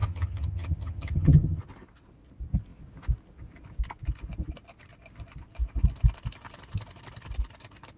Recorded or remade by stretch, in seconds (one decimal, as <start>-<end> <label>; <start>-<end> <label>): 0.0-1.6 remade; 1.6-8.0 recorded